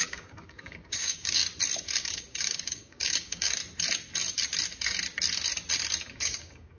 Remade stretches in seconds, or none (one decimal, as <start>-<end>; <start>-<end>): 0.0-1.4; 2.0-3.6; 6.1-6.8